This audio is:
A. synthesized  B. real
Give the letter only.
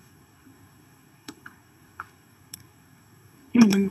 A